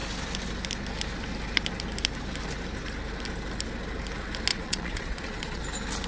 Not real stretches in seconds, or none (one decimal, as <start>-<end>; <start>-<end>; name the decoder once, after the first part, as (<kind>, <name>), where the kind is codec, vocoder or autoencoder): 4.5-5.6 (vocoder, Vocos)